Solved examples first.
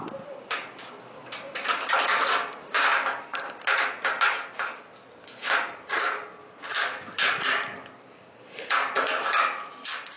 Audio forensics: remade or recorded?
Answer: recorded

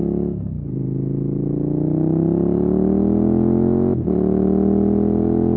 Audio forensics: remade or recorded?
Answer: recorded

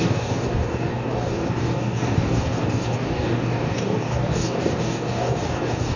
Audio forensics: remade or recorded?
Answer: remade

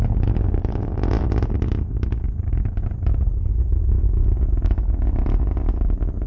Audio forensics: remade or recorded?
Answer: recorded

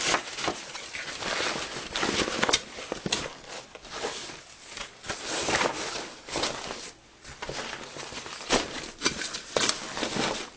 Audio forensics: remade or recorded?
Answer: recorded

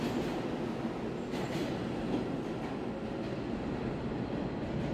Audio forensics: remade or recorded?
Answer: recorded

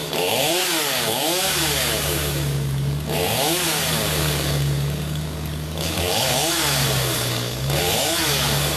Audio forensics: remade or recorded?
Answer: remade